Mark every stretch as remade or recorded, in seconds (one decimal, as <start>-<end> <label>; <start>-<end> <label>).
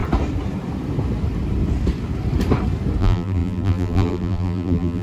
0.0-3.0 recorded; 3.0-5.0 remade